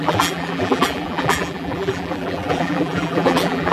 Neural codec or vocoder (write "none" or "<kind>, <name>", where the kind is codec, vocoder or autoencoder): vocoder, BigVGAN v2